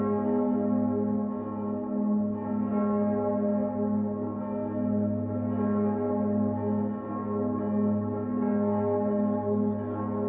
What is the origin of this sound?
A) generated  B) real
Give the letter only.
B